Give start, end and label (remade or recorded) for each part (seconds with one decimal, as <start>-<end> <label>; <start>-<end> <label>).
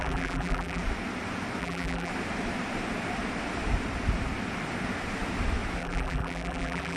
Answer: 0.0-0.8 remade; 0.8-1.6 recorded; 1.6-2.1 remade; 2.1-5.8 recorded; 5.8-7.0 remade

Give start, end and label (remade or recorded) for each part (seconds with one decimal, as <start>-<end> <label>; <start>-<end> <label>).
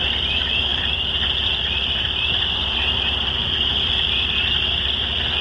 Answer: 0.0-0.7 recorded; 0.7-3.9 remade; 3.9-5.4 recorded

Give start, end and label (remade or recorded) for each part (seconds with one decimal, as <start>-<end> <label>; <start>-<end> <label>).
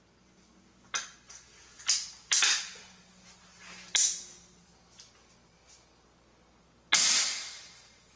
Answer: 0.0-8.2 recorded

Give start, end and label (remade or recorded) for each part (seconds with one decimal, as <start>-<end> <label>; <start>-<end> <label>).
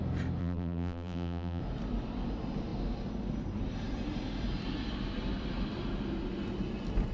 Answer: 0.0-0.4 recorded; 0.4-1.6 remade; 1.6-7.1 recorded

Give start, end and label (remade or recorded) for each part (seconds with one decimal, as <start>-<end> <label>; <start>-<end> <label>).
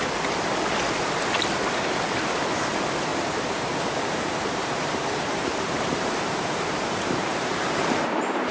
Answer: 0.0-3.1 recorded; 3.1-7.7 remade; 7.7-8.5 recorded